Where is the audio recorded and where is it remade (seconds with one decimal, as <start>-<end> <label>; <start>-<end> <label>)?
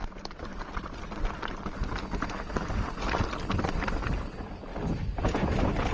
0.0-5.9 recorded